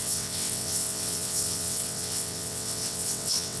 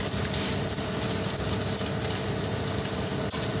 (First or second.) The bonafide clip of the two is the second